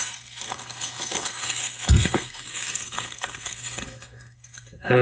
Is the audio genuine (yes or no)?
no